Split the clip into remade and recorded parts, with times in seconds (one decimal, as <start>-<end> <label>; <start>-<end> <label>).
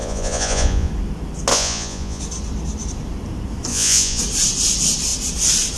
0.0-0.9 remade; 0.9-1.5 recorded; 1.5-2.2 remade; 2.2-3.7 recorded; 3.7-4.2 remade; 4.2-5.8 recorded